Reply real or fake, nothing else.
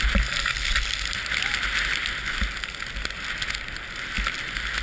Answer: real